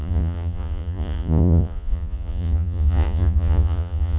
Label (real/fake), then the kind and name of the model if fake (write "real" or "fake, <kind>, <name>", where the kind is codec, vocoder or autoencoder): fake, vocoder, Vocos